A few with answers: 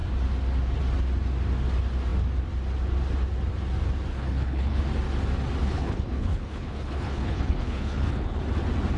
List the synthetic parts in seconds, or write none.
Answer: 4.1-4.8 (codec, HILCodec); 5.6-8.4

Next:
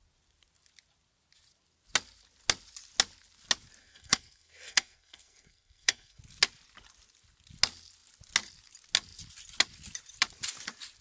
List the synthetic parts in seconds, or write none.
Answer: 3.8-6.2 (codec, SNAC)

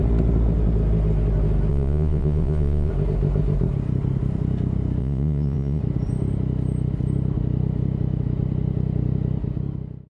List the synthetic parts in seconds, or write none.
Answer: 1.7-2.9 (vocoder, Vocos); 5.0-5.8

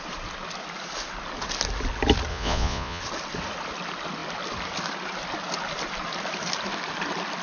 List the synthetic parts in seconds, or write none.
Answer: 2.3-3.0 (vocoder, Vocos)

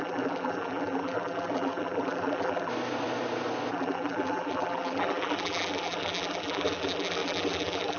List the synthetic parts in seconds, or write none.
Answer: 0.0-2.7 (vocoder, BigVGAN v2); 3.7-8.0

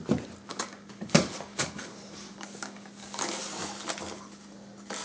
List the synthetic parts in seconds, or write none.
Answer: 0.5-3.4 (codec, DAC)